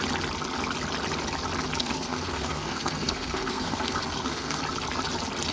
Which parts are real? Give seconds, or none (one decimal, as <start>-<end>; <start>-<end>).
0.0-1.8; 4.6-5.5